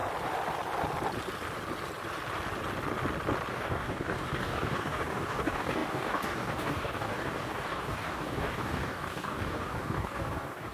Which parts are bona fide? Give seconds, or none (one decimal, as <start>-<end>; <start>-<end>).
0.0-3.5